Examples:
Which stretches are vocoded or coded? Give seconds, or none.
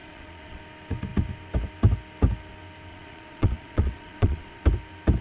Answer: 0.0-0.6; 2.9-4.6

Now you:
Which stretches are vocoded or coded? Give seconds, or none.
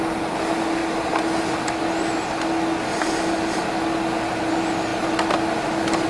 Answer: none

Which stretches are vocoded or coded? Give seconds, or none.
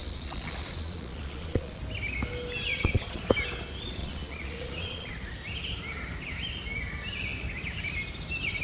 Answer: 0.0-1.8; 2.7-3.2; 4.0-5.1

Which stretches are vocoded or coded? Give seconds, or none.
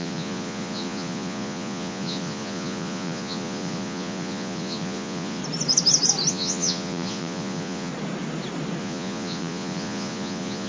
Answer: 0.0-5.4; 6.3-7.9; 8.8-10.7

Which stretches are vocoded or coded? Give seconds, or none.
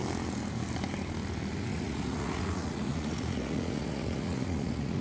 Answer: 1.7-5.0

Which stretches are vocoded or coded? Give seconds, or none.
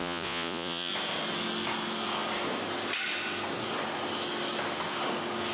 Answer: 0.0-0.9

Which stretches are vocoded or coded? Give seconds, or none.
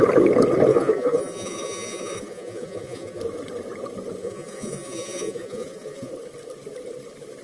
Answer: 0.7-3.2; 4.2-6.1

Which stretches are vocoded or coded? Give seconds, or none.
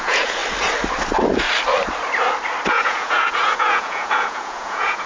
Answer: 0.0-0.4; 2.7-5.1